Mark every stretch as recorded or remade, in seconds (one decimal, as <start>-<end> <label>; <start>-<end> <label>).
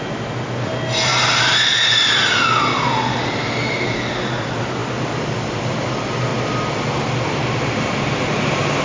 0.0-8.8 recorded